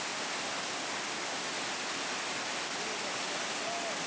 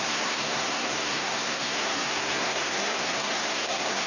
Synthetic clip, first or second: second